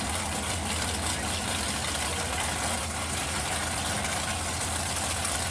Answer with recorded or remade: recorded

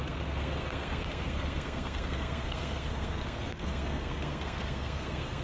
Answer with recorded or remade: remade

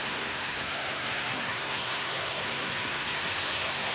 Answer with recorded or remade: remade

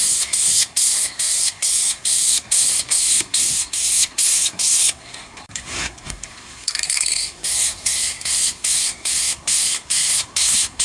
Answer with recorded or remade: remade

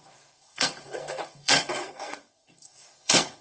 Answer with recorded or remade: remade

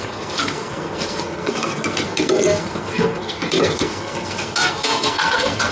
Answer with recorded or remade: remade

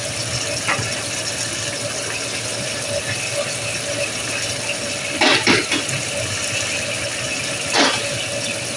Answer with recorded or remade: recorded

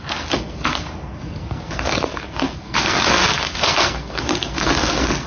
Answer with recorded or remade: remade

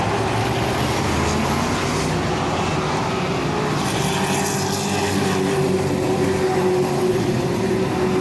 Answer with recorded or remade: recorded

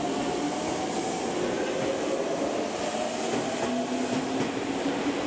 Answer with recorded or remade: recorded